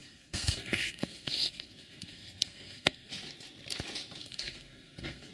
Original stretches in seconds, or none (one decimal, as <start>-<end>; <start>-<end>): 3.1-4.2